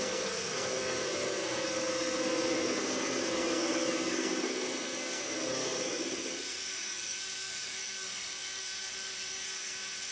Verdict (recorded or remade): remade